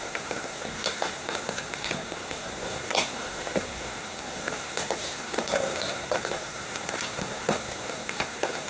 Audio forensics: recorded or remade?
remade